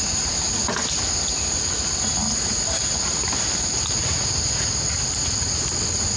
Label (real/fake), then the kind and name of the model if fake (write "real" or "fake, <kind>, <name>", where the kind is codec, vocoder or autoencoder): real